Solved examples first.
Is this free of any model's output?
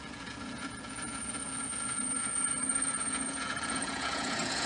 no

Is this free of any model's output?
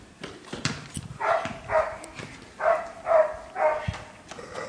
yes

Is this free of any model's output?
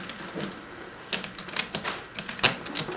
yes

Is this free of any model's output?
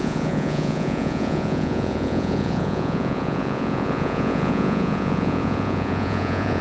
no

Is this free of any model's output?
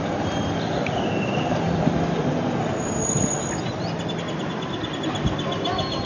yes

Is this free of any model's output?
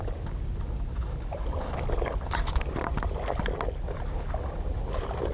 yes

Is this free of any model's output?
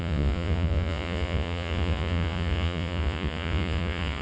no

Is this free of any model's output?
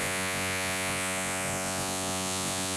no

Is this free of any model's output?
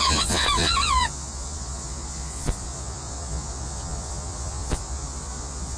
no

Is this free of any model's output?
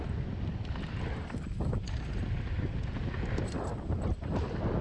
yes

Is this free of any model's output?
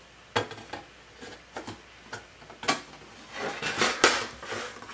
yes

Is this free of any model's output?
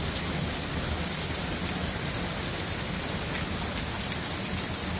yes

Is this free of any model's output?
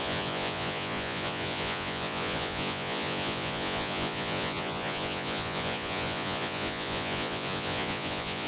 no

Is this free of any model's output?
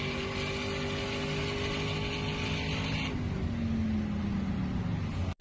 yes